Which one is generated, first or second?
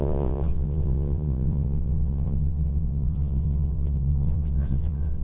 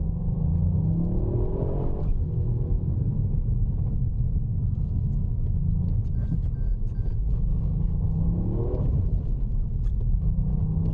first